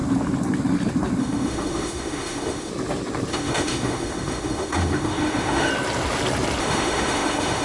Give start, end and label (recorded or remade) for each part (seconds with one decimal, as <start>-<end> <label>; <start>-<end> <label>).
0.0-1.2 recorded; 1.2-2.7 remade; 2.7-3.3 recorded; 3.3-5.7 remade; 5.7-6.6 recorded; 6.6-7.6 remade

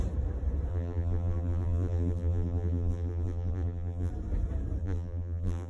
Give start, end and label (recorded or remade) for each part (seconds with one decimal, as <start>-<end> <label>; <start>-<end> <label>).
0.0-0.7 recorded; 0.7-4.1 remade; 4.1-4.8 recorded; 4.8-5.7 remade

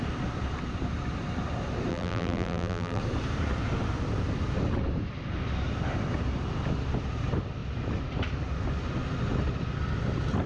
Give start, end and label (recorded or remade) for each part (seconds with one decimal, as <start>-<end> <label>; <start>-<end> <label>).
0.0-1.9 recorded; 1.9-3.0 remade; 3.0-10.5 recorded